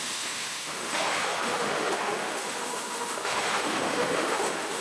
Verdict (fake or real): fake